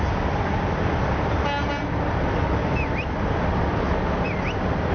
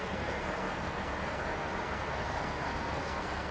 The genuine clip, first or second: first